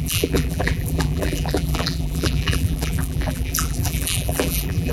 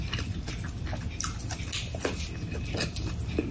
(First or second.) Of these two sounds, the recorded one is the second